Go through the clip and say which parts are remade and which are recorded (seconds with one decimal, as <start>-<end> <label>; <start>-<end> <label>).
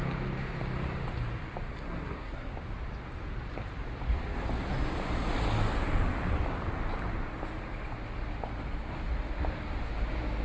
0.0-1.7 recorded; 1.7-2.5 remade; 2.5-10.4 recorded